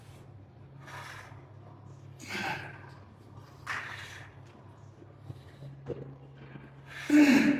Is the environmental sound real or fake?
real